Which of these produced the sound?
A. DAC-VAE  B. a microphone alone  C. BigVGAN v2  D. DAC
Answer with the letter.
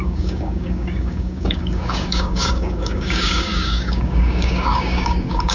D